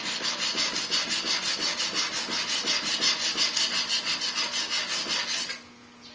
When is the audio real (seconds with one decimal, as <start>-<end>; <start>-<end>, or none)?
0.0-6.1